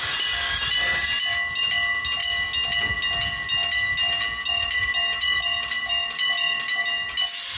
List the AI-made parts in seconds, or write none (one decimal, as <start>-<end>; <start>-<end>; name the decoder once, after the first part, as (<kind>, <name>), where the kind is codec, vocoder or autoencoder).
none